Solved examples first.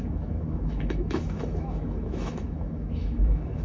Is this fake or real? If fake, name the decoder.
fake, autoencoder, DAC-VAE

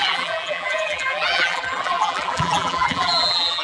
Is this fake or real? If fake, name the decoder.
fake, vocoder, BigVGAN v2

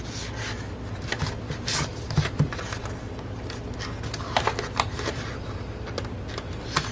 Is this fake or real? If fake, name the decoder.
real